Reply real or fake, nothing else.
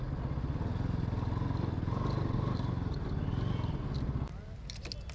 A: real